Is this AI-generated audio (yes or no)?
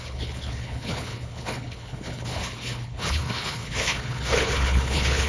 yes